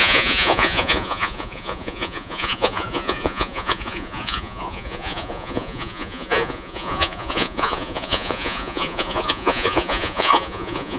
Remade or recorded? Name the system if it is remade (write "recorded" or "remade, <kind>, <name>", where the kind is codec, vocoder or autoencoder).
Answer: remade, vocoder, Vocos